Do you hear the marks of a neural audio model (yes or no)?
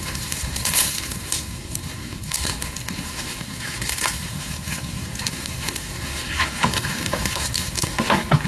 yes